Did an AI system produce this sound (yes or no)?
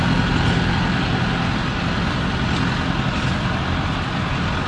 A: no